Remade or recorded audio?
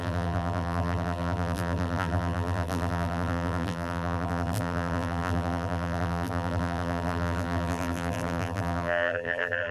remade